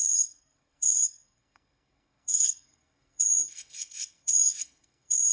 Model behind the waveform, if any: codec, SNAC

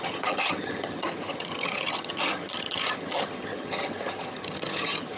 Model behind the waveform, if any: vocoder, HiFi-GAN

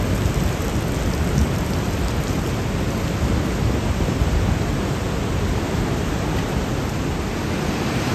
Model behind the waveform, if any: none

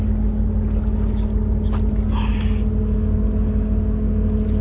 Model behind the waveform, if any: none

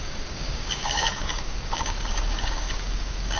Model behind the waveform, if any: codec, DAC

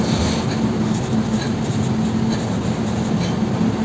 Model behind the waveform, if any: none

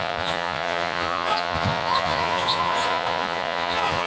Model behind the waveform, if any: vocoder, Vocos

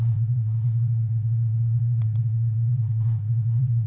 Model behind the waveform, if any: vocoder, Vocos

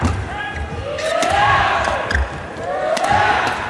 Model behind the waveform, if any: vocoder, BigVGAN v2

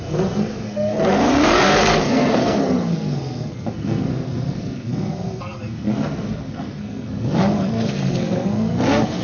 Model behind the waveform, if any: codec, SNAC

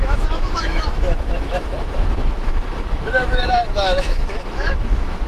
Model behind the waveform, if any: autoencoder, DAC-VAE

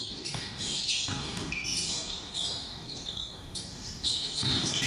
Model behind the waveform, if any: codec, DAC